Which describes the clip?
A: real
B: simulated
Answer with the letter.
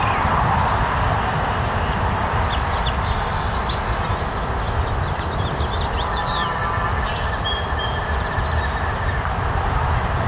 A